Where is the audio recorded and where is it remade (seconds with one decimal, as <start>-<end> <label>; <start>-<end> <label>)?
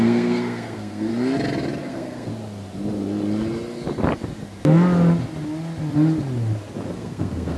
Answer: 0.0-1.1 remade; 1.1-1.8 recorded; 1.8-2.3 remade; 2.3-6.9 recorded; 6.9-7.6 remade